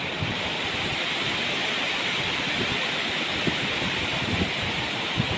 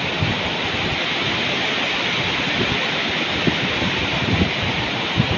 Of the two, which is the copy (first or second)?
first